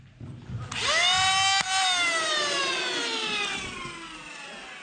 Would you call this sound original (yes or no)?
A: yes